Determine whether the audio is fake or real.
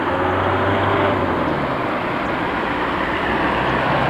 fake